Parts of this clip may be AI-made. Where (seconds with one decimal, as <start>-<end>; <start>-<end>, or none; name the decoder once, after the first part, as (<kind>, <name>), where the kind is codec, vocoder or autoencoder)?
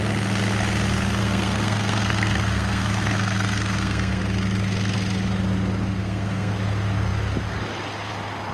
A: 1.2-4.2 (codec, SNAC); 6.0-6.5